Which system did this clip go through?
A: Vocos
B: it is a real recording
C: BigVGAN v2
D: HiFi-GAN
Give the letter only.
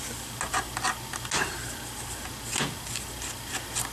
B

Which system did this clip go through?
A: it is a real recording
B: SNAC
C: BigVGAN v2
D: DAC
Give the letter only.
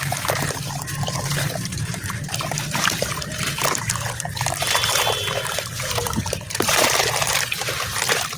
C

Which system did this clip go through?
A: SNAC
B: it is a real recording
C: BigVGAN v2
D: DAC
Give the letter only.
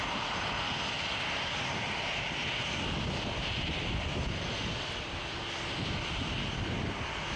B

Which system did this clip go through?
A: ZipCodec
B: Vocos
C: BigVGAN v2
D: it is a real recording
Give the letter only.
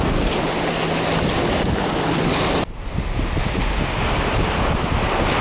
D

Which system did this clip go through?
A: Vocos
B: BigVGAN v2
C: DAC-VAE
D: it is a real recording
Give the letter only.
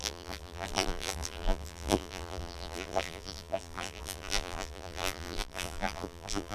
B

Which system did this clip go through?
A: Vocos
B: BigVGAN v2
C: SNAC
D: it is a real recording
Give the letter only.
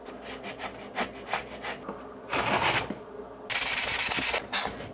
D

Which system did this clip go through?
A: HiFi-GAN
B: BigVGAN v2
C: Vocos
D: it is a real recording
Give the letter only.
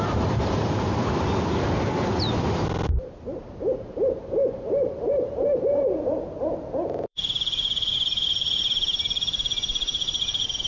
B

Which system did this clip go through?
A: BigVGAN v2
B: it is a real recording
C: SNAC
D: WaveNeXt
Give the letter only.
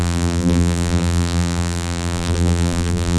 A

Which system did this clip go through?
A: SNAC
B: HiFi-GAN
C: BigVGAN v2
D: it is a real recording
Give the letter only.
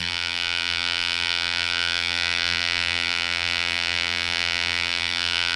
C